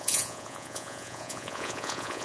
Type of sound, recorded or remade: remade